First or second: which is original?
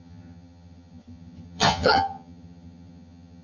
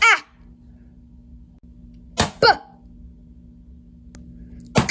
second